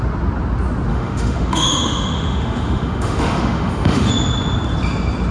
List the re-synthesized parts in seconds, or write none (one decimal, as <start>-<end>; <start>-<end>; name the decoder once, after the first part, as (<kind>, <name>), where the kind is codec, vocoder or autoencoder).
0.9-4.1 (autoencoder, DAC-VAE)